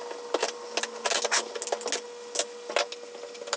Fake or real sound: real